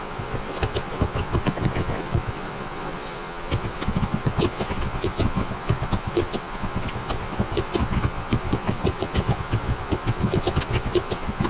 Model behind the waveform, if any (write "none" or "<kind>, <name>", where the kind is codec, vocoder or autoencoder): vocoder, Vocos